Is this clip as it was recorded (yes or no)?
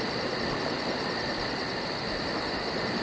yes